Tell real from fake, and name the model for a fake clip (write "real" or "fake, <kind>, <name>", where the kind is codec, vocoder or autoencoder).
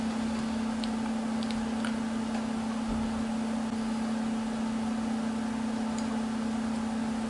real